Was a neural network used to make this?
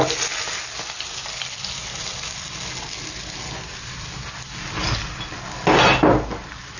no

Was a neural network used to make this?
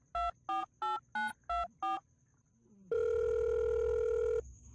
no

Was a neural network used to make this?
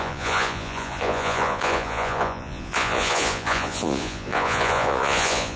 yes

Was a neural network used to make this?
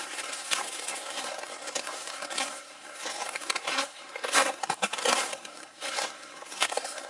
yes